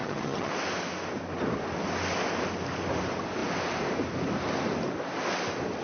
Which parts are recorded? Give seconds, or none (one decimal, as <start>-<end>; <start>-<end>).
0.5-5.8

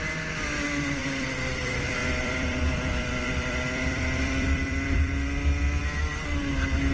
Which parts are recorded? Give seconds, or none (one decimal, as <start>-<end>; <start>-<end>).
0.0-1.0; 5.1-6.9

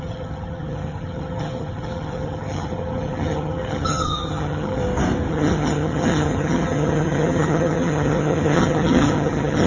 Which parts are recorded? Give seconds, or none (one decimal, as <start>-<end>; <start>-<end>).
4.8-5.3

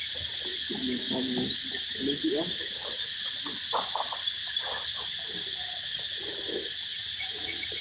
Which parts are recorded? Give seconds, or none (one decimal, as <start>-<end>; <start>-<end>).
0.0-6.9